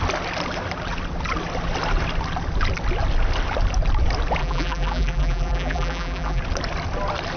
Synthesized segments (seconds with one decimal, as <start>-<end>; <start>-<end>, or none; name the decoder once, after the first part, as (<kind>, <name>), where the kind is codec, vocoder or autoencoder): 4.4-6.4 (vocoder, BigVGAN v2)

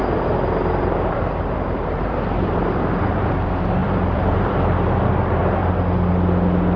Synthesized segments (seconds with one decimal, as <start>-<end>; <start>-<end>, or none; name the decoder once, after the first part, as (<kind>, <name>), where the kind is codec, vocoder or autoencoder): 0.8-5.4 (vocoder, BigVGAN v2)

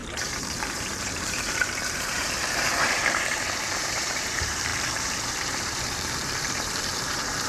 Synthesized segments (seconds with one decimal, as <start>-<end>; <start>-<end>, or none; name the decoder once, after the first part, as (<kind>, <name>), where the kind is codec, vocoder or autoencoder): 0.0-7.5 (vocoder, BigVGAN v2)